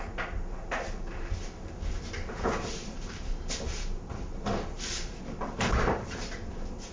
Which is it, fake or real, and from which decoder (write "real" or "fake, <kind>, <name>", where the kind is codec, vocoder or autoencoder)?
real